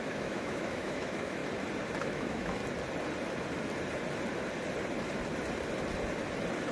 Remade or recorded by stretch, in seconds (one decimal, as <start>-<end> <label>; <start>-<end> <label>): 0.0-1.4 remade; 1.4-2.0 recorded; 2.0-2.6 remade; 2.6-6.7 recorded